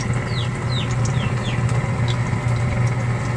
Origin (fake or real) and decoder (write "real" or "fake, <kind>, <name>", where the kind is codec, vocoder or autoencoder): real